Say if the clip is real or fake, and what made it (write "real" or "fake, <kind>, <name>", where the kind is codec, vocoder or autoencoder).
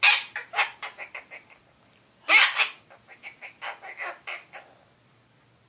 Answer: real